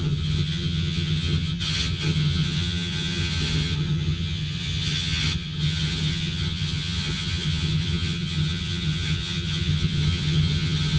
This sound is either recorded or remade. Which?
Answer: remade